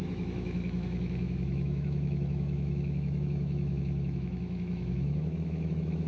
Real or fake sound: fake